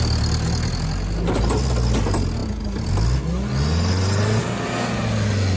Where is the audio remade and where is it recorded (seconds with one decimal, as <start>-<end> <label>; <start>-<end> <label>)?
0.0-5.6 recorded

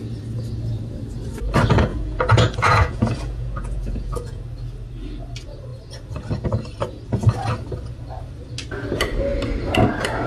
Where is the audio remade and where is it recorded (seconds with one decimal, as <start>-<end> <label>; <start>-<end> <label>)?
0.0-1.9 recorded; 1.9-4.4 remade; 4.4-10.3 recorded

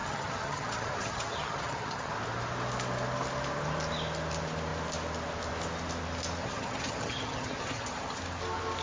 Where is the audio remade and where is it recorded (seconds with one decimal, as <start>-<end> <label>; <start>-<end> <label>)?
0.0-2.1 remade; 2.1-6.4 recorded; 6.4-8.2 remade; 8.2-8.8 recorded

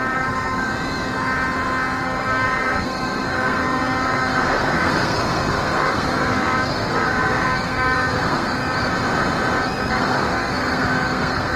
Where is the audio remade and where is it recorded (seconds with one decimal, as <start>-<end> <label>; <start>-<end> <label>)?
0.0-0.7 remade; 0.7-2.0 recorded; 2.0-8.6 remade; 8.6-9.9 recorded; 9.9-11.6 remade

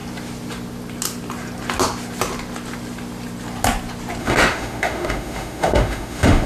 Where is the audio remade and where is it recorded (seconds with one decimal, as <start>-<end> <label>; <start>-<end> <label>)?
0.0-4.2 recorded; 4.2-6.5 remade

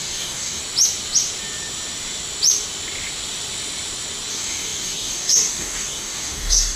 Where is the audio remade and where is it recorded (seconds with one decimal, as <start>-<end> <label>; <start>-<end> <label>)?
0.0-0.6 remade; 0.6-4.3 recorded; 4.3-6.8 remade

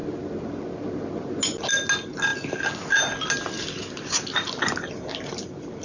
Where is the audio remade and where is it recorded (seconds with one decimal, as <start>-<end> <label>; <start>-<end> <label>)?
0.0-5.8 recorded